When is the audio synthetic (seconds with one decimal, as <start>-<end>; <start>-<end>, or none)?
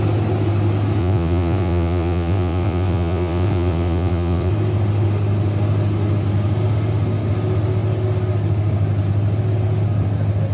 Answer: 1.0-4.5